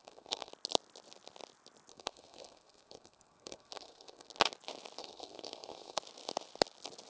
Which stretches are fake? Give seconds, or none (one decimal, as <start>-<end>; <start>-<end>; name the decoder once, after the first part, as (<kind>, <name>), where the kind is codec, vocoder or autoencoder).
0.0-0.5 (codec, SNAC); 1.9-4.3; 5.0-6.0